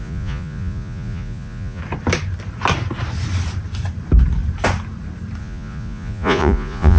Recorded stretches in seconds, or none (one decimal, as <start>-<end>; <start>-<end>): 1.8-5.4